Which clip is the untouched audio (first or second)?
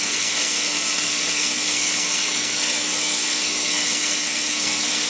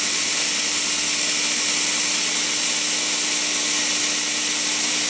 second